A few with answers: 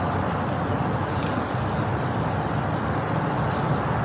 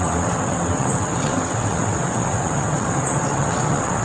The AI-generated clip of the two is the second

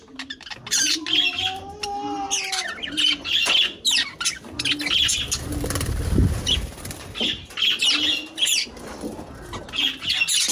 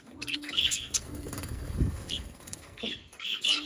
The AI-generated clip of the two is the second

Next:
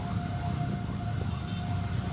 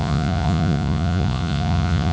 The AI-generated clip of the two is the second